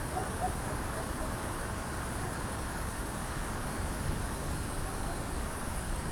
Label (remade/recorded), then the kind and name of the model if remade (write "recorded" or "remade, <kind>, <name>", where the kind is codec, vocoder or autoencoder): remade, codec, DAC